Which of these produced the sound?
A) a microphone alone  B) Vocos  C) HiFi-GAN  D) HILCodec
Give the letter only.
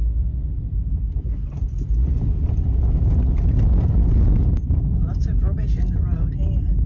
A